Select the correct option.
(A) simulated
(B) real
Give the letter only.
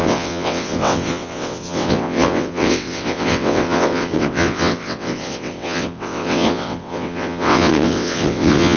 A